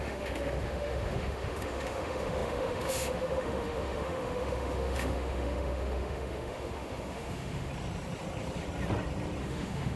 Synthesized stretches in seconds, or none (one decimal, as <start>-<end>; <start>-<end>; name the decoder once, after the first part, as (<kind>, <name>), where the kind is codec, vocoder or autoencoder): 0.0-7.7 (autoencoder, DAC-VAE); 9.4-10.0